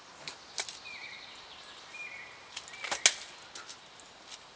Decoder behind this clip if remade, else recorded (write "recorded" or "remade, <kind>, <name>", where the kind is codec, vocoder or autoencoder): recorded